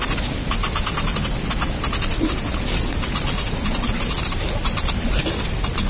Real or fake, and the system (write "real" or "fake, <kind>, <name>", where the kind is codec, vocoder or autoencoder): real